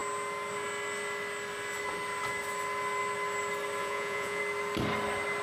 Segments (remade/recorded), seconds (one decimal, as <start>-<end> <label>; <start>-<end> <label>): 0.0-3.8 recorded; 3.8-4.4 remade; 4.4-5.4 recorded